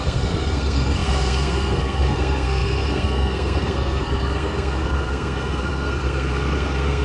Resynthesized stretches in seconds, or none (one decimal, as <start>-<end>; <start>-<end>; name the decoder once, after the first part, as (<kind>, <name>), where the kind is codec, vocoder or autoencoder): 0.0-7.0 (codec, SNAC)